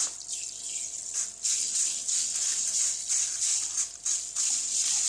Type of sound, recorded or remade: recorded